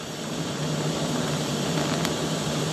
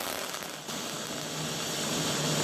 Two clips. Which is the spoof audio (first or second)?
first